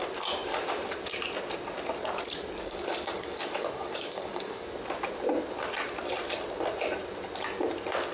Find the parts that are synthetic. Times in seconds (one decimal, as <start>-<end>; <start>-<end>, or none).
2.6-4.7